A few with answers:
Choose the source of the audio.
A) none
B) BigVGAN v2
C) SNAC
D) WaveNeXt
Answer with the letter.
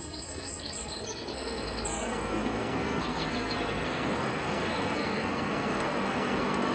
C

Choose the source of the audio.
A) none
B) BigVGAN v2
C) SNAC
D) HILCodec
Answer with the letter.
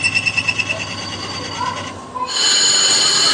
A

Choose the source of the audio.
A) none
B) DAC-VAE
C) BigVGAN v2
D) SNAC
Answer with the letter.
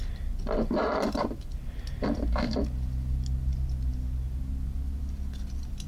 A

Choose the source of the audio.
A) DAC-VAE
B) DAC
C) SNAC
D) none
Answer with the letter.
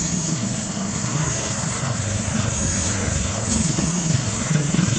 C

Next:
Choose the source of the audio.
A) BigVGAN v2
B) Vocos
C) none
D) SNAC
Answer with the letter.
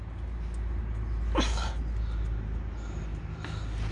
C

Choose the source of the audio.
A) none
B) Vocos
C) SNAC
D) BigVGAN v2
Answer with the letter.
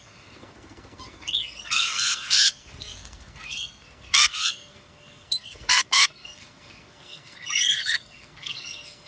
C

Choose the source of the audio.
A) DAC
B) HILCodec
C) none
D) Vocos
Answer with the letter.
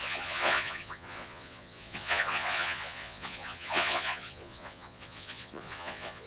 D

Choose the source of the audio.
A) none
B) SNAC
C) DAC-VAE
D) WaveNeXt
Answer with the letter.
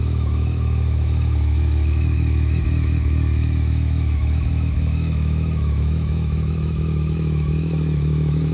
C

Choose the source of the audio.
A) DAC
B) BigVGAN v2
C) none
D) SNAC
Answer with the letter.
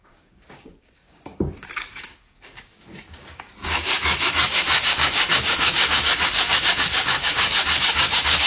A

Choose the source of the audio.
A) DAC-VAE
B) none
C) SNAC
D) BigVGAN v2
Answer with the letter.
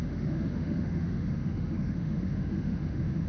A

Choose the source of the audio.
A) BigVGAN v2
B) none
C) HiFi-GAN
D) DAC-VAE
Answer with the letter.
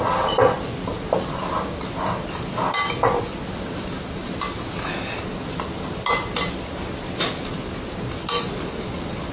B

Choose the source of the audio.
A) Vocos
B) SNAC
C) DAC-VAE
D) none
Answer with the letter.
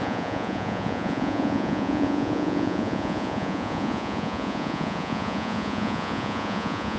A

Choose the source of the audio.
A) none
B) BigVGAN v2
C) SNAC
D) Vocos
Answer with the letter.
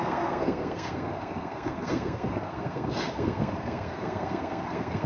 C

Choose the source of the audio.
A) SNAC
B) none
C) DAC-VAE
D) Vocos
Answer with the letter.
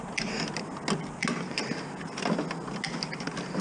B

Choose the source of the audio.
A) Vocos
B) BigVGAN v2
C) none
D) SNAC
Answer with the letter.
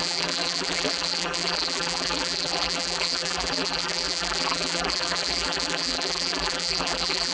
B